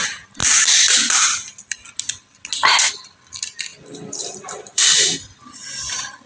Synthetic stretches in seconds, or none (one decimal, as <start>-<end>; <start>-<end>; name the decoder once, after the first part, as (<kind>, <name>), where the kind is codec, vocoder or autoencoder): 0.4-1.6 (vocoder, BigVGAN v2); 3.7-6.3